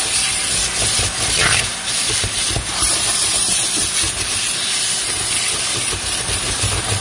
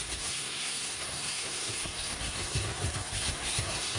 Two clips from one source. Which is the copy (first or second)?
second